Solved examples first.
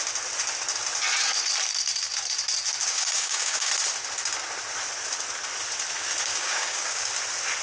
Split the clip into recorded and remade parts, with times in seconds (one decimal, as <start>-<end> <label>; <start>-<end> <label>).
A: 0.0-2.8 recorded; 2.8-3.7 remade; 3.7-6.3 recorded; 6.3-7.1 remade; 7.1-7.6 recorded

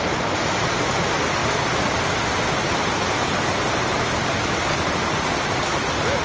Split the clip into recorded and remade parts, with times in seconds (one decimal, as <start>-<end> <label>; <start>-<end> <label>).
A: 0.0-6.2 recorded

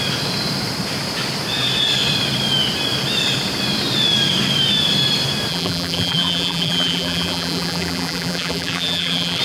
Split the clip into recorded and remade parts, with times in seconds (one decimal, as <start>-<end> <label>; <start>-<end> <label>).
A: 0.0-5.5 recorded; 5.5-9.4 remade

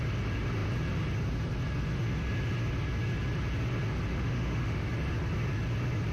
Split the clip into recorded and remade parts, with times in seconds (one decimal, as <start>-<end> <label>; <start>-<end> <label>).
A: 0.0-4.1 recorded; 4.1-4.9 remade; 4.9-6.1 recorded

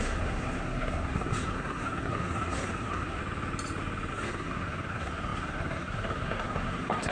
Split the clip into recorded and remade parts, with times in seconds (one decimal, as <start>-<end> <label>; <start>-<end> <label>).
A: 0.0-3.2 remade; 3.2-4.1 recorded; 4.1-7.1 remade

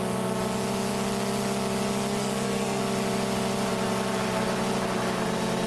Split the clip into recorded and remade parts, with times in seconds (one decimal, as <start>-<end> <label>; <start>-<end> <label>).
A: 0.0-2.2 recorded; 2.2-2.8 remade; 2.8-5.7 recorded

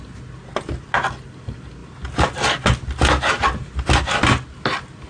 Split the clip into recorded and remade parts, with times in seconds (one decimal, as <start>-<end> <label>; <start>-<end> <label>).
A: 0.0-5.1 recorded

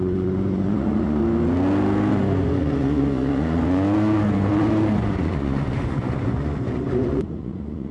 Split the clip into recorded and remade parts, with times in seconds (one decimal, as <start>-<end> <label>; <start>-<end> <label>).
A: 0.0-1.2 remade; 1.2-2.1 recorded; 2.1-7.9 remade